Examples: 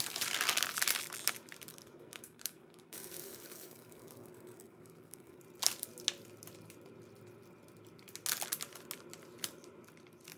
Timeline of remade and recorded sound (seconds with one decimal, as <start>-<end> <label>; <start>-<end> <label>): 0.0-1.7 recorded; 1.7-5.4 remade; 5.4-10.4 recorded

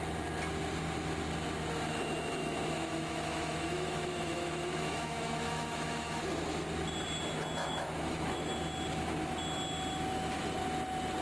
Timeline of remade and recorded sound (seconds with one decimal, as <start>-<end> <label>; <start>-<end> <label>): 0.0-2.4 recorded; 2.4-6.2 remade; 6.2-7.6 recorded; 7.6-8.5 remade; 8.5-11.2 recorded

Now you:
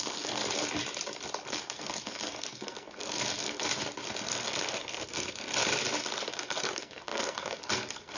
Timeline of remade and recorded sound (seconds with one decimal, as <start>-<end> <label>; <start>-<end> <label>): 0.0-0.4 remade; 0.4-1.5 recorded; 1.5-3.7 remade; 3.7-4.2 recorded; 4.2-5.5 remade; 5.5-6.3 recorded; 6.3-8.2 remade

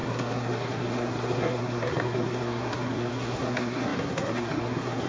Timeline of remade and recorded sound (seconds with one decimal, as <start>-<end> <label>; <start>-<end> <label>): 0.0-5.1 remade